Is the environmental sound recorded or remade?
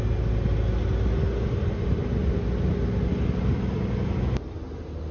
recorded